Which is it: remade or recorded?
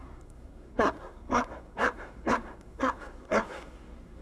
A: remade